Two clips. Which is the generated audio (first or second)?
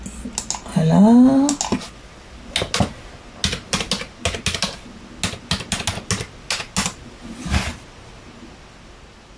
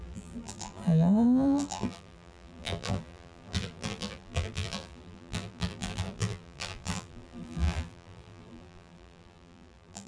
second